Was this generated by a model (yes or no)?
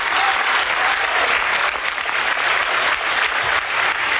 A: no